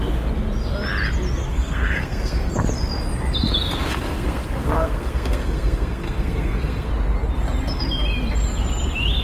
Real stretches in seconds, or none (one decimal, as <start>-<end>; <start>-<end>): 0.0-1.5; 2.5-3.9; 6.9-9.2